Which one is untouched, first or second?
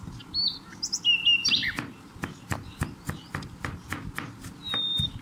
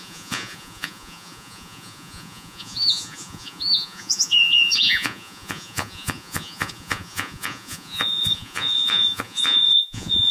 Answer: first